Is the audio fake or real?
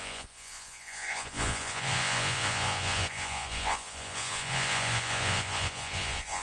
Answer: fake